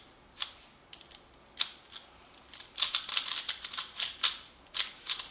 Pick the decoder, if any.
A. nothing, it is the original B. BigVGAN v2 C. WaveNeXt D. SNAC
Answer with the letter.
A